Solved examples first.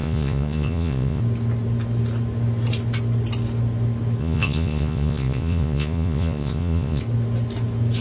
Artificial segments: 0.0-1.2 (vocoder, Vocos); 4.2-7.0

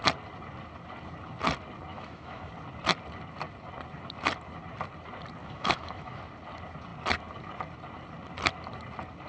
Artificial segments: 1.9-2.5 (autoencoder, DAC-VAE); 5.4-6.2

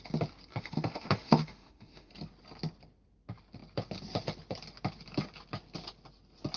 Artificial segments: 0.5-2.1 (autoencoder, DAC-VAE)